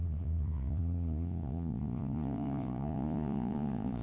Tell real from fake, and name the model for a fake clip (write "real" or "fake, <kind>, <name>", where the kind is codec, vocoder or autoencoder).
fake, vocoder, Vocos